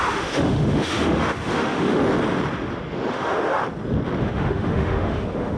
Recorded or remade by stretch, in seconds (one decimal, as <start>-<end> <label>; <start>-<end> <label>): 0.0-2.0 remade; 2.0-3.1 recorded; 3.1-3.6 remade; 3.6-4.2 recorded; 4.2-5.6 remade